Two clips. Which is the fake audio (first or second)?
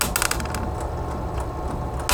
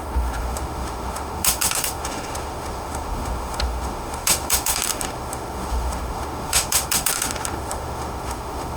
second